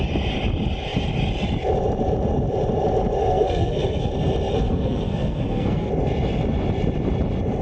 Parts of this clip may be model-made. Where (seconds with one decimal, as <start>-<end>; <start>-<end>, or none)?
3.2-4.1; 4.5-5.9